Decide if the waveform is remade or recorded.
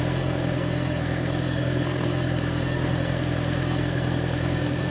remade